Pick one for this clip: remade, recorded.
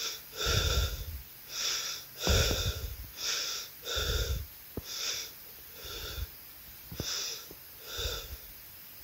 recorded